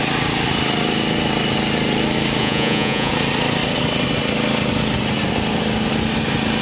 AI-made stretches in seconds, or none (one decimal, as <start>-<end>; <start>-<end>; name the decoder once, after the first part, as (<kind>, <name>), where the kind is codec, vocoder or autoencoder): 2.4-3.1 (vocoder, Vocos)